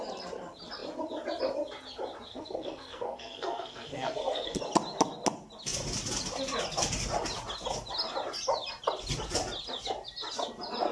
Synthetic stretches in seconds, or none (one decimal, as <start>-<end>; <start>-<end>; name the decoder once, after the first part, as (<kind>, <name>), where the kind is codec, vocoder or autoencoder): 2.3-4.6 (codec, SNAC)